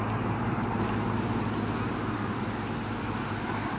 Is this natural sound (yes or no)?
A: yes